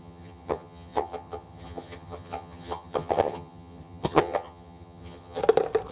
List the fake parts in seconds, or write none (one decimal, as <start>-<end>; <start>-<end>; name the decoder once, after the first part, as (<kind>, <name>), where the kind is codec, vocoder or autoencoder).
0.0-5.4 (vocoder, HiFi-GAN)